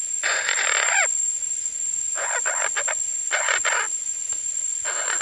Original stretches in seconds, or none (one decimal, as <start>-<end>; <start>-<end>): none